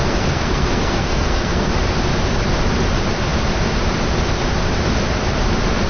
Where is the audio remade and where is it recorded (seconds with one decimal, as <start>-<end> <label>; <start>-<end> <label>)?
0.0-1.7 remade; 1.7-5.9 recorded